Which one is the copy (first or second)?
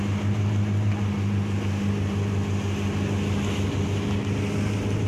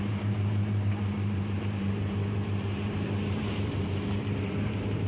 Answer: second